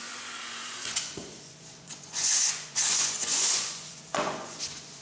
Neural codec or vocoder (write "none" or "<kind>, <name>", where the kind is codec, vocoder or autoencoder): vocoder, Vocos